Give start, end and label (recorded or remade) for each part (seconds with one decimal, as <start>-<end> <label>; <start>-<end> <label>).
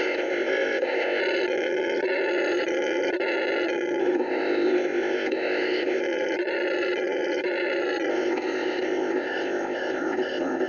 0.0-1.2 remade; 1.2-4.0 recorded; 4.0-6.0 remade; 6.0-8.1 recorded; 8.1-10.7 remade